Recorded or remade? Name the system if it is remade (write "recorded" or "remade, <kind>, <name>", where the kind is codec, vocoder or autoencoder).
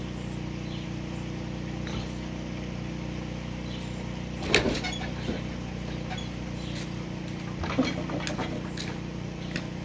recorded